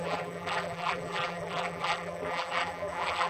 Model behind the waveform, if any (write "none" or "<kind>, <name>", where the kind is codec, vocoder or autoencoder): vocoder, BigVGAN v2